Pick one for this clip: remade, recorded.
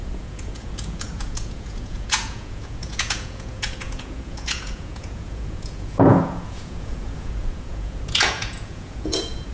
remade